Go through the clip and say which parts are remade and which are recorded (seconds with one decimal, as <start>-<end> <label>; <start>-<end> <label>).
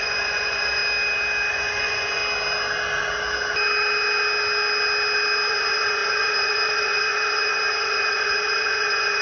0.0-0.8 remade; 0.8-1.5 recorded; 1.5-2.2 remade; 2.2-5.5 recorded; 5.5-9.2 remade